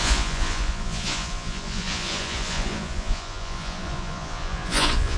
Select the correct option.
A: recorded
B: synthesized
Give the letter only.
B